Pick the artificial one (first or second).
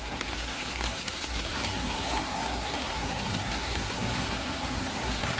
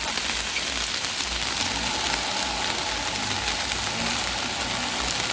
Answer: first